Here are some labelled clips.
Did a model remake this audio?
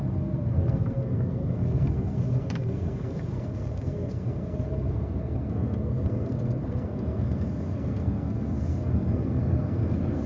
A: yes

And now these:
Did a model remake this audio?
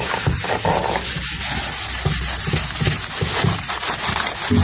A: no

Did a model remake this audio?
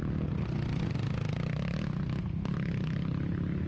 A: no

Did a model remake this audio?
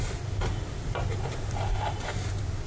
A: no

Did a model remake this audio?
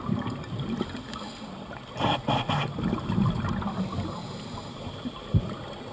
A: no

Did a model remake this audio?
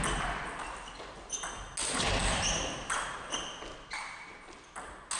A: no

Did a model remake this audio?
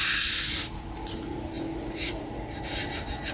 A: no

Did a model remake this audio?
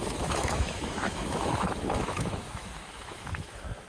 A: yes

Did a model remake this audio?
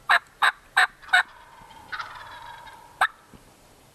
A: yes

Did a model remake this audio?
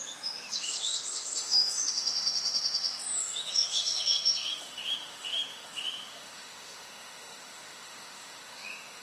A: yes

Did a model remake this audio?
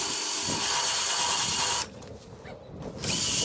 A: no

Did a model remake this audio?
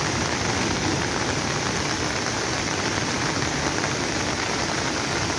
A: no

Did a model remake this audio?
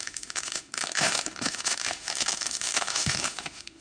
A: yes